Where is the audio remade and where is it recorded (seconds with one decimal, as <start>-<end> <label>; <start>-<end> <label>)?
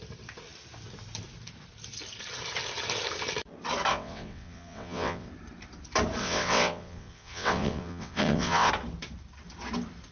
0.0-3.9 recorded; 3.9-5.3 remade; 5.3-6.2 recorded; 6.2-8.7 remade; 8.7-10.1 recorded